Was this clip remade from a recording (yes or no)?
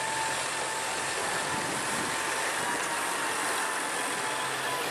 no